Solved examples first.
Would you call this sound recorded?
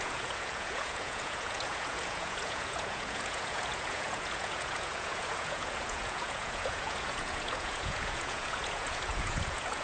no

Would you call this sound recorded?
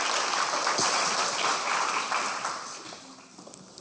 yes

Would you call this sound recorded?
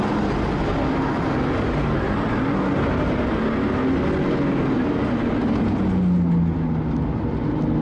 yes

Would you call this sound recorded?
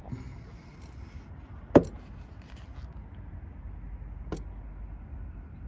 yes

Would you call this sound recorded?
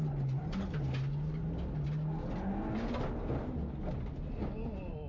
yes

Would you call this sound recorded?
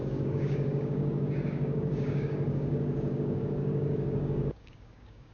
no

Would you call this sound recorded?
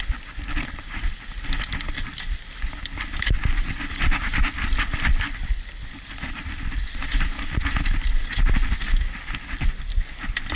yes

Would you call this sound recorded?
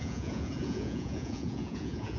no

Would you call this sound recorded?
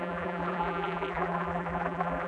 no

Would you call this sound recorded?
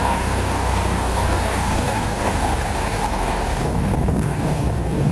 no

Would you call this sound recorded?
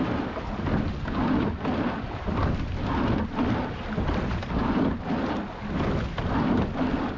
yes